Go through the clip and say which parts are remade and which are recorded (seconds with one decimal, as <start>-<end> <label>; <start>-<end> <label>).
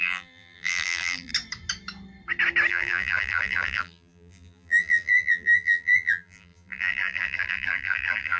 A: 0.0-1.3 remade; 1.3-2.7 recorded; 2.7-8.4 remade